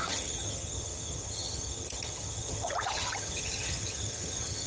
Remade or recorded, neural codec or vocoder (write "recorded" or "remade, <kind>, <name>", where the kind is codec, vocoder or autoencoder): remade, vocoder, HiFi-GAN